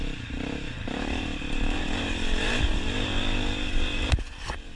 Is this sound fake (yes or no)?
yes